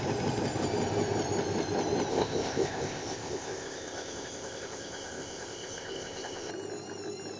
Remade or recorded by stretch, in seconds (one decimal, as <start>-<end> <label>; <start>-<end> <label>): 0.0-2.1 recorded; 2.1-6.5 remade; 6.5-7.4 recorded